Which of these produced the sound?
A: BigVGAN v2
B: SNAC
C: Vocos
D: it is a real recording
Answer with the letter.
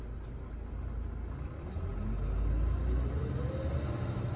D